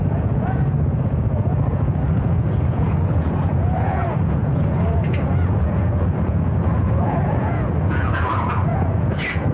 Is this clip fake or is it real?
fake